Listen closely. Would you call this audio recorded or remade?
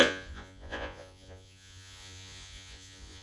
remade